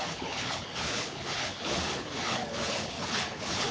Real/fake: fake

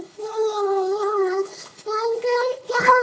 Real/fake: fake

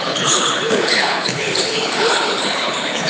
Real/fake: fake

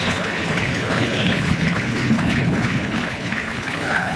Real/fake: fake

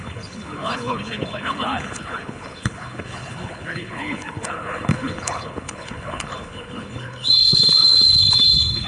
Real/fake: fake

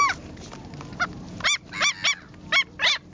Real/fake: real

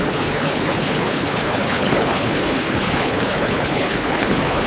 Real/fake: fake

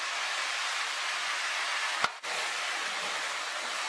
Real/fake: real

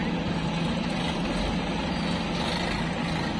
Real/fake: real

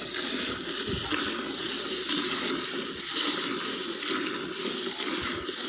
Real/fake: real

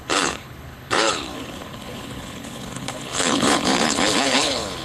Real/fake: fake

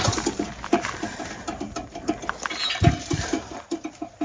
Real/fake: real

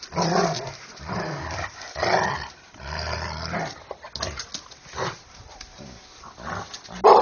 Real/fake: real